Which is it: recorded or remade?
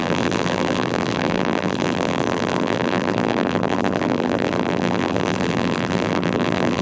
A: remade